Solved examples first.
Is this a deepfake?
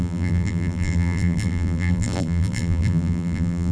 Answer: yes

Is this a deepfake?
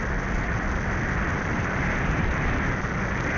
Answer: no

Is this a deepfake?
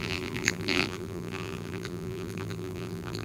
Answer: yes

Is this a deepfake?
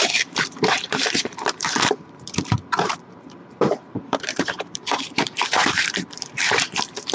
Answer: yes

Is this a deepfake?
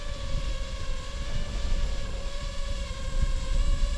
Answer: yes